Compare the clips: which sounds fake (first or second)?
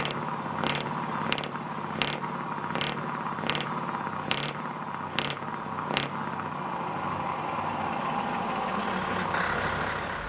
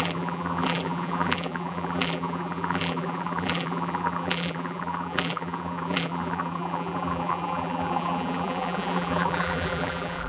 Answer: second